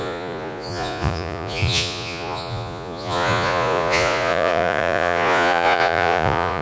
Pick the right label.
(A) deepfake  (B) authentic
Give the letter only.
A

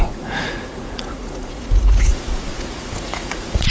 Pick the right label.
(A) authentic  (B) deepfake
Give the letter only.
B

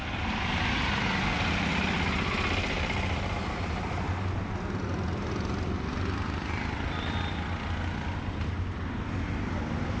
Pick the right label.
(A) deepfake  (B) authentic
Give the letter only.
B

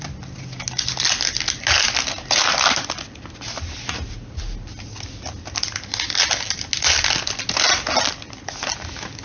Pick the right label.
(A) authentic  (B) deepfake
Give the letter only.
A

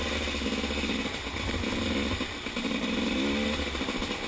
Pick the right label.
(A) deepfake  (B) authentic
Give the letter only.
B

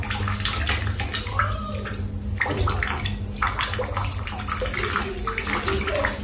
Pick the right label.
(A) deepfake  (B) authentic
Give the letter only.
B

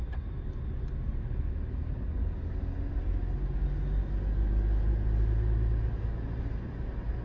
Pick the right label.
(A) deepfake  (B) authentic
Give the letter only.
B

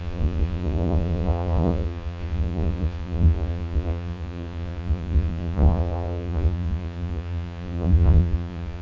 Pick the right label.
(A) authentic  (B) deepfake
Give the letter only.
B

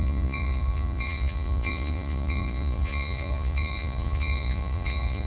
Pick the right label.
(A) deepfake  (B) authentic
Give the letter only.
A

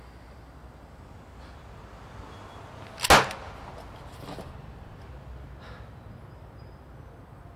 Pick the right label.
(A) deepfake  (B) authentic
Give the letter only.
B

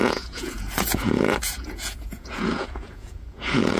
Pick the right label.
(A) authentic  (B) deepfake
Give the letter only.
B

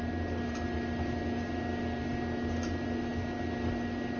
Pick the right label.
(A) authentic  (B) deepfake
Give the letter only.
A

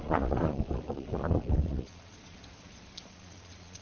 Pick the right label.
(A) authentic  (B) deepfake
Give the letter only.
B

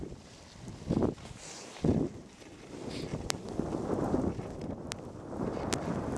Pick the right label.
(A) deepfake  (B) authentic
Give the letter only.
B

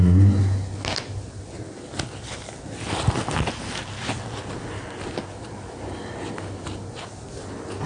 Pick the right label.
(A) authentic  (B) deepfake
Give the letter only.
A